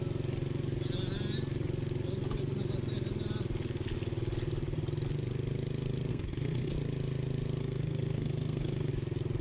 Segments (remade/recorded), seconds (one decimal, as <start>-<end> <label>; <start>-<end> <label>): 0.0-6.1 recorded; 6.1-6.7 remade; 6.7-7.6 recorded; 7.6-8.9 remade; 8.9-9.4 recorded